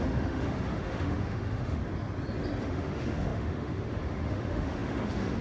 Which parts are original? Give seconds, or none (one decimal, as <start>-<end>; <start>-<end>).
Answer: 1.8-2.6